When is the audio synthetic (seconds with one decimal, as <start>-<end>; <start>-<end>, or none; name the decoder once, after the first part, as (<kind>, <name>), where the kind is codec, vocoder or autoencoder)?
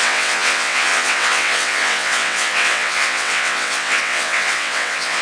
0.0-5.2 (vocoder, WaveNeXt)